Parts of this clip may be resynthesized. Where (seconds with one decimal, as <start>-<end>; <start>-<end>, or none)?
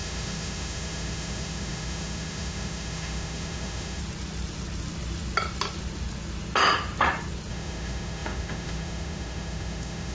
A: 0.0-4.0; 7.5-10.1